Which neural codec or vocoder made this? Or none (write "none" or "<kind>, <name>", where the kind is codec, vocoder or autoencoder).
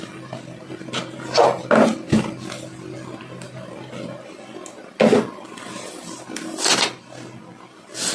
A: none